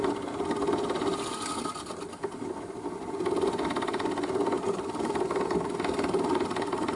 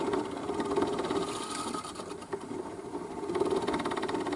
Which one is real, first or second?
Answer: first